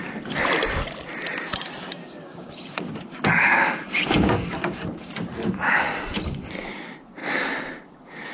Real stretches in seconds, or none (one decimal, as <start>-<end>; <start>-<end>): 0.0-2.0; 2.9-3.3; 5.1-8.3